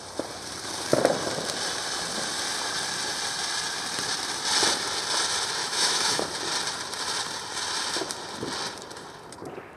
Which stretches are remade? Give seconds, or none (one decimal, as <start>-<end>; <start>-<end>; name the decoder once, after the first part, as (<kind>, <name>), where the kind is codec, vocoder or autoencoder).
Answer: 5.6-6.2 (autoencoder, DAC-VAE)